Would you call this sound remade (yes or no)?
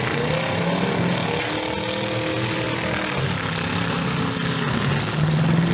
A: no